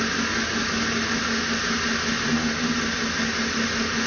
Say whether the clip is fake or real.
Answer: real